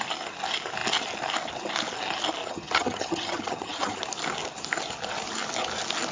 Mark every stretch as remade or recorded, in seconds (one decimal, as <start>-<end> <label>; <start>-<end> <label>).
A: 0.0-2.4 recorded; 2.4-4.0 remade; 4.0-6.1 recorded